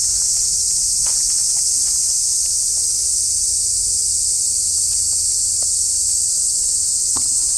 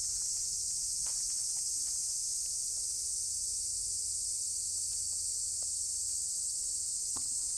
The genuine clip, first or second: second